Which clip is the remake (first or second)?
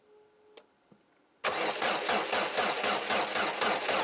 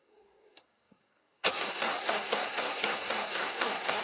second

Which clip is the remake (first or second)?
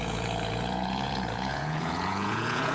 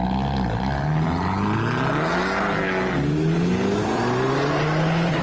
first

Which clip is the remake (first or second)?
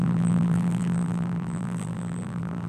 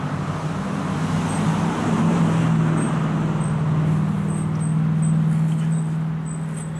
first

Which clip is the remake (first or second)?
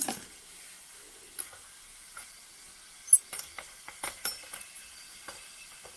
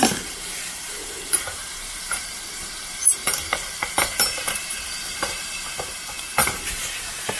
second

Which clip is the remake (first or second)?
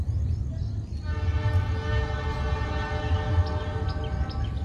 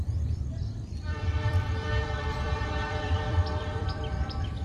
second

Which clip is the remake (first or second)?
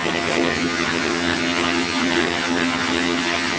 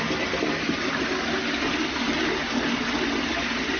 first